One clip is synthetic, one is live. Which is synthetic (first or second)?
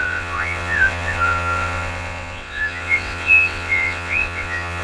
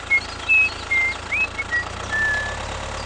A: first